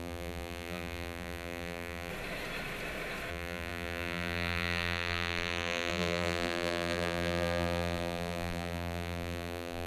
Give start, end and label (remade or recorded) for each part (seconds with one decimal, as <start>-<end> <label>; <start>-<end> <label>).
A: 0.0-2.1 remade; 2.1-3.3 recorded; 3.3-9.9 remade